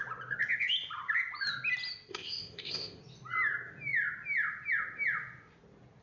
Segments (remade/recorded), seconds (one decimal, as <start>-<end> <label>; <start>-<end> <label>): 0.0-2.1 recorded; 2.1-3.0 remade; 3.0-6.0 recorded